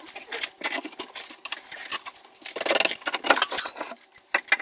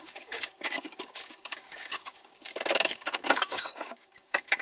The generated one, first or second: second